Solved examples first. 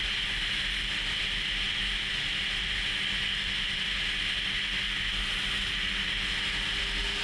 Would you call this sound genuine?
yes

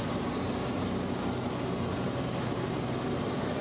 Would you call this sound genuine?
yes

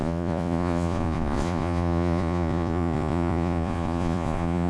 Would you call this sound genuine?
no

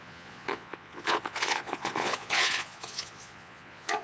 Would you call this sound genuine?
no